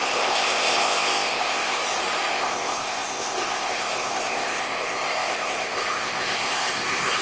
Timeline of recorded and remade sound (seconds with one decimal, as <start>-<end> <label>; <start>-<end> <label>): 0.0-1.8 remade; 1.8-2.3 recorded; 2.3-7.2 remade